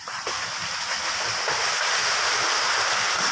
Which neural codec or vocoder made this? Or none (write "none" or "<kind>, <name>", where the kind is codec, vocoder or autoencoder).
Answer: none